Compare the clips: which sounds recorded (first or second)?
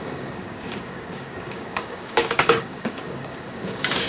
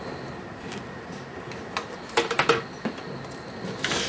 second